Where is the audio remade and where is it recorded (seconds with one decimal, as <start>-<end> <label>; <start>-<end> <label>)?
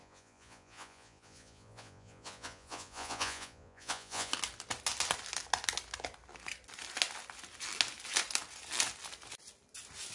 0.0-4.3 remade; 4.3-10.1 recorded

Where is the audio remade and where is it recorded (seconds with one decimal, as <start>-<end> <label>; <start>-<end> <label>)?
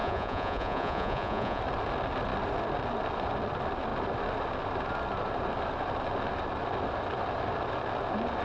0.0-1.6 remade; 1.6-8.4 recorded